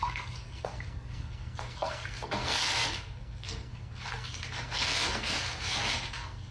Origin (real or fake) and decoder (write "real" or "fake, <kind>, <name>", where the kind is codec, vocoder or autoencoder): fake, codec, SNAC